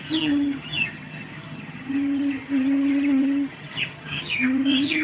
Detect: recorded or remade remade